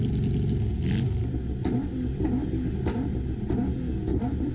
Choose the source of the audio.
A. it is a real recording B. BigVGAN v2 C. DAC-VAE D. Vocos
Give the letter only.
A